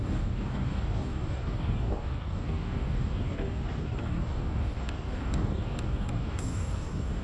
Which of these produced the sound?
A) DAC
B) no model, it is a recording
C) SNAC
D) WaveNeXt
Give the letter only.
A